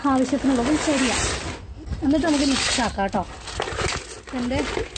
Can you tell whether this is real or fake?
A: real